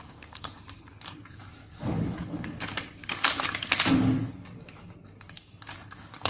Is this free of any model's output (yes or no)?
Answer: no